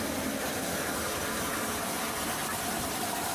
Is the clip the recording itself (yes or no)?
yes